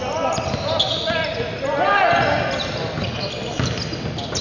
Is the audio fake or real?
real